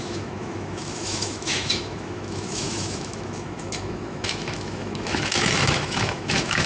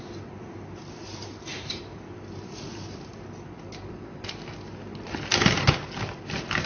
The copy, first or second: first